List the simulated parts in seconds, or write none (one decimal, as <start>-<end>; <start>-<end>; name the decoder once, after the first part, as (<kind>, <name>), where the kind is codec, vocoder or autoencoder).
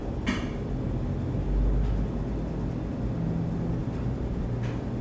3.8-4.4 (vocoder, BigVGAN v2)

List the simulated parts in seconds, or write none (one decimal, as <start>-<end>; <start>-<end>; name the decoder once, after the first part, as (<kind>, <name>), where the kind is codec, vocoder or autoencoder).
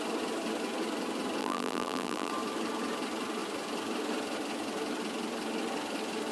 1.4-2.3 (vocoder, BigVGAN v2)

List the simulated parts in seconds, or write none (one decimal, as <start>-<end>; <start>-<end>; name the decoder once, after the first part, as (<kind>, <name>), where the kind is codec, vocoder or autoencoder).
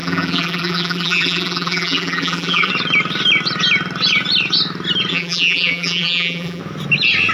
0.0-2.7 (vocoder, BigVGAN v2); 5.1-6.6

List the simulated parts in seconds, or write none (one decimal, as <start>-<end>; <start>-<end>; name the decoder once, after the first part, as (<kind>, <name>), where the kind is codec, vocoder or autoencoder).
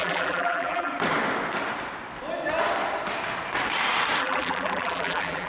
0.0-0.9 (vocoder, BigVGAN v2); 4.2-5.5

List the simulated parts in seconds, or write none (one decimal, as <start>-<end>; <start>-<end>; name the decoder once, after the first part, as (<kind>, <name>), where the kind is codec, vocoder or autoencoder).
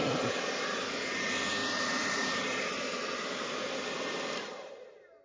1.6-4.7 (vocoder, BigVGAN v2)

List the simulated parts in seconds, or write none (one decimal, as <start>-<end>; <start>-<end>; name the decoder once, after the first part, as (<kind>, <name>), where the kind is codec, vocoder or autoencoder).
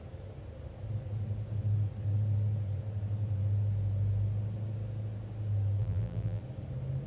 5.8-6.4 (vocoder, BigVGAN v2)